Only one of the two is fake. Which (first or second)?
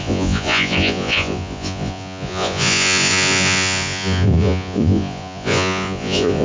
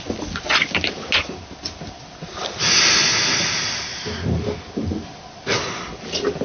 first